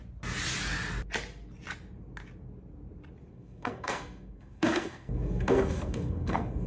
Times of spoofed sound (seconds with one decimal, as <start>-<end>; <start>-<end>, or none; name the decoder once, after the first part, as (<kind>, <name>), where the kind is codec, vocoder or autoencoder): 3.3-6.7 (codec, SNAC)